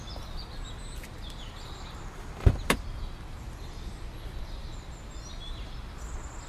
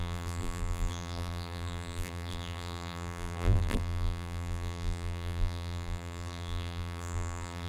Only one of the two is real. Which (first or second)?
first